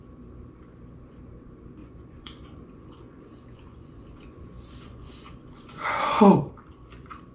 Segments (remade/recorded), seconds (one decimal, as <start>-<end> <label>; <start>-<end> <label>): 0.0-1.8 recorded; 1.8-6.2 remade; 6.2-7.3 recorded